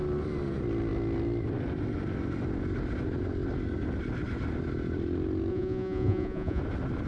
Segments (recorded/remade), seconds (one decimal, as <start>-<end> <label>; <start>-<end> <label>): 0.0-5.5 recorded; 5.5-6.6 remade; 6.6-7.1 recorded